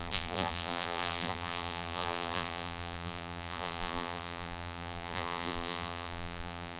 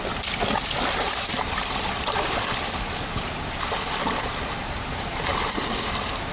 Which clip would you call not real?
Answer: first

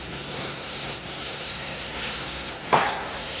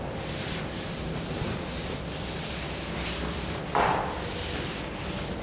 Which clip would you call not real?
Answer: first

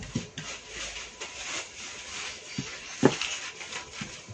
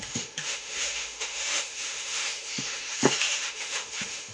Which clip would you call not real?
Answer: second